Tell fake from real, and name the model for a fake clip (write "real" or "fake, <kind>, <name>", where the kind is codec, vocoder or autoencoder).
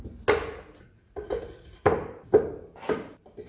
real